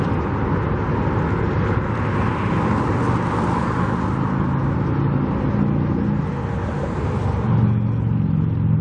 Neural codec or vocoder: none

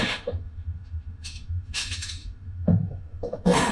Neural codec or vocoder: autoencoder, DAC-VAE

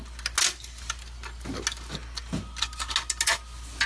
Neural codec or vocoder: none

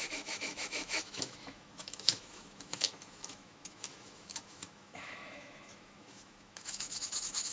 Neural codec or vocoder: autoencoder, DAC-VAE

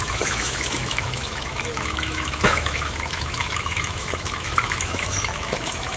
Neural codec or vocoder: autoencoder, DAC-VAE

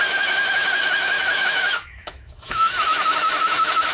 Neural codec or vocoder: autoencoder, DAC-VAE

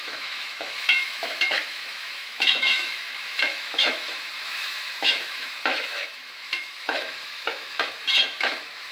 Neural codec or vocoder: autoencoder, DAC-VAE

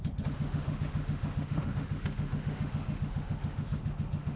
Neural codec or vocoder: autoencoder, DAC-VAE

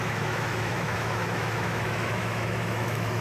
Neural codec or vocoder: autoencoder, DAC-VAE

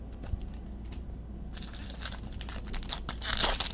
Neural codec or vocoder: none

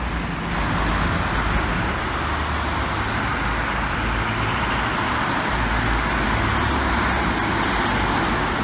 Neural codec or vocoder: none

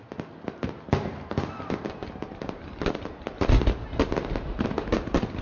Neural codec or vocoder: none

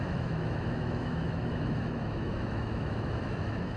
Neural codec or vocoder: autoencoder, DAC-VAE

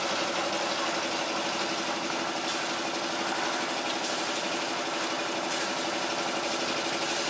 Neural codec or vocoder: none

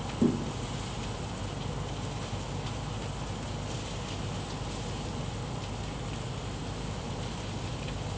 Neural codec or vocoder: none